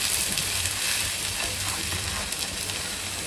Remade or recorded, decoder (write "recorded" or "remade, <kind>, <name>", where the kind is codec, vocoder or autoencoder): recorded